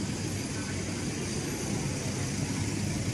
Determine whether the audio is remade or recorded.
recorded